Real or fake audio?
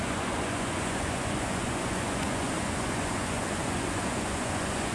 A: fake